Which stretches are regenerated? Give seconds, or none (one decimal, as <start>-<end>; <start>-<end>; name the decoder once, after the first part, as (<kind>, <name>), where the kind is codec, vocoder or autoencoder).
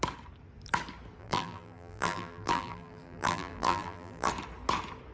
1.2-4.3 (vocoder, BigVGAN v2)